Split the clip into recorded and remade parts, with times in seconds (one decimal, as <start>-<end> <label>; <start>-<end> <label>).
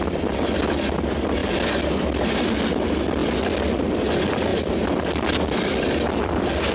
0.0-6.7 recorded